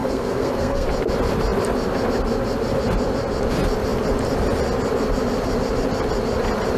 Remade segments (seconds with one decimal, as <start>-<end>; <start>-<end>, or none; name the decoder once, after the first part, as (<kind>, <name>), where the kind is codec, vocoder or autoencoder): 0.0-0.9 (codec, SNAC)